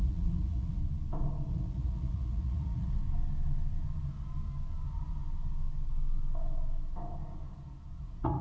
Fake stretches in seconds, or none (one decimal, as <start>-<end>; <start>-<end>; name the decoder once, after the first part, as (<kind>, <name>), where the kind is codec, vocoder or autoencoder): 0.0-0.8 (vocoder, Vocos); 1.5-3.0; 8.0-8.4